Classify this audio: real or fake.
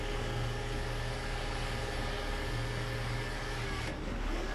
fake